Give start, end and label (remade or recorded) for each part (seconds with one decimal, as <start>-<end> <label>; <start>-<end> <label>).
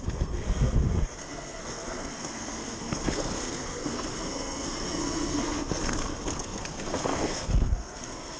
0.0-8.4 remade